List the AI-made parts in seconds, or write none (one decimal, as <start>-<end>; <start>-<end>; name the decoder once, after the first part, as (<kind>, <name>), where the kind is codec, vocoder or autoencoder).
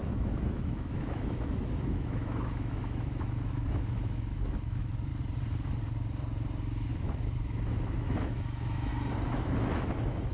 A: 0.0-5.1 (autoencoder, DAC-VAE); 6.9-8.9; 9.4-10.3